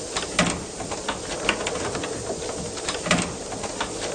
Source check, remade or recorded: recorded